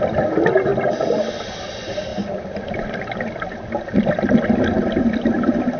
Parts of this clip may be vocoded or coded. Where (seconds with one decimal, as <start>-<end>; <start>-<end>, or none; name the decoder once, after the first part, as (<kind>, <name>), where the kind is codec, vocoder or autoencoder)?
none